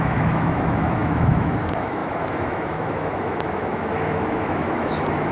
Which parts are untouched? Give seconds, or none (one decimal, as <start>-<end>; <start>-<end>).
none